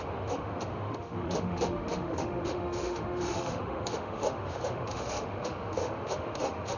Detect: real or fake fake